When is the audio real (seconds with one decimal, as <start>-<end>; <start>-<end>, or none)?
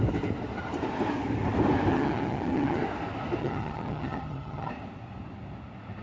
0.0-1.9; 2.8-3.4; 4.7-6.0